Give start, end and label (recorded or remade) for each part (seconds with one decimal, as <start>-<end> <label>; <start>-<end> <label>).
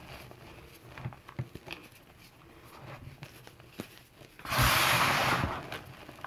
0.0-6.3 recorded